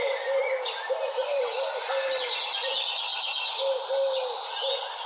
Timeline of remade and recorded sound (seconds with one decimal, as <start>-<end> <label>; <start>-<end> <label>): 0.0-5.1 recorded